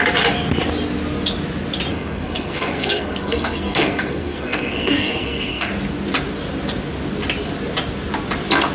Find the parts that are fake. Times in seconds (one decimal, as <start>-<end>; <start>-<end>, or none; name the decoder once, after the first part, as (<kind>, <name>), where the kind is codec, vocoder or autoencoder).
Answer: 1.9-5.7 (codec, SNAC)